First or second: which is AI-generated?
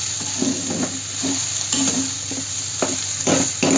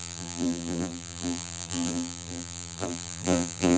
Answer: second